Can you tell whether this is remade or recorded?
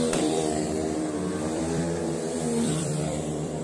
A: remade